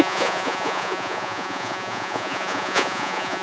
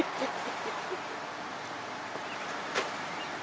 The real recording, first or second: second